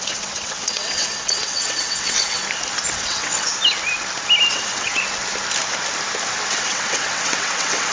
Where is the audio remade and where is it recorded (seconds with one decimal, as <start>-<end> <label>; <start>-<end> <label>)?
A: 0.0-2.4 remade; 2.4-2.9 recorded; 2.9-3.5 remade; 3.5-4.5 recorded; 4.5-4.9 remade; 4.9-6.5 recorded; 6.5-7.9 remade